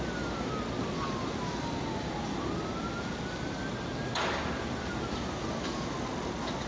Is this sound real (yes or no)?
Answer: yes